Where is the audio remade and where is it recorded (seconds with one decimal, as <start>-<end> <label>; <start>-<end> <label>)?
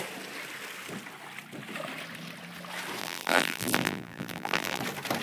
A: 0.0-3.0 recorded; 3.0-4.8 remade; 4.8-5.2 recorded